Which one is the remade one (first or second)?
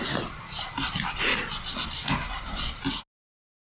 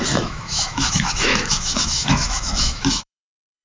second